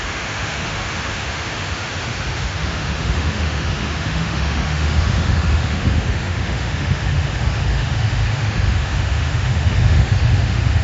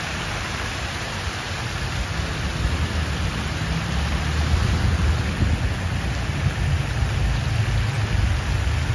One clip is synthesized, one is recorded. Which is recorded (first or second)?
second